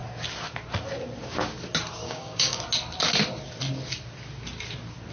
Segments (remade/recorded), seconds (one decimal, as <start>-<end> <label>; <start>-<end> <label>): 0.0-2.0 recorded; 2.0-2.6 remade; 2.6-5.1 recorded